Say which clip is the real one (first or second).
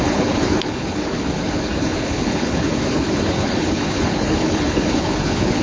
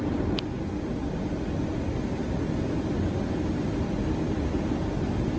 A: second